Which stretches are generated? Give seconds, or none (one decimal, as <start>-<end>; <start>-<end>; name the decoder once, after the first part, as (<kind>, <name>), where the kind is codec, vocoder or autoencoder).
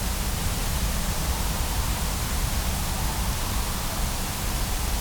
0.4-2.9 (vocoder, BigVGAN v2)